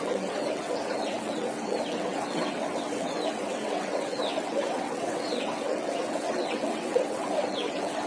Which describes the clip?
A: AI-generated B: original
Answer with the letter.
A